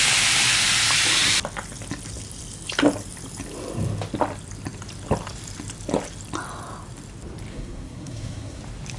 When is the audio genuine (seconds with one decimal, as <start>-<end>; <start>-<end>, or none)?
0.0-7.5; 8.6-9.0